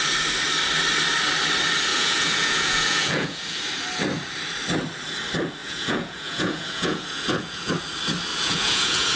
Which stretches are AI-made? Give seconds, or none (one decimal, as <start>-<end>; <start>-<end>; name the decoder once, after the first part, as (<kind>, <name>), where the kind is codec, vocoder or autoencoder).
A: 1.9-3.6 (vocoder, Vocos); 5.6-7.7; 8.3-9.2